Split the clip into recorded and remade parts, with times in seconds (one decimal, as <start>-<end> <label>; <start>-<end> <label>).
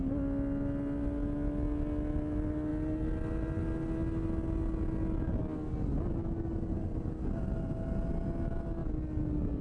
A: 0.0-9.6 recorded